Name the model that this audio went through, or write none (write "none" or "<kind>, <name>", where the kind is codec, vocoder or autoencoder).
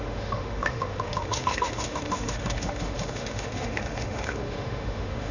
autoencoder, DAC-VAE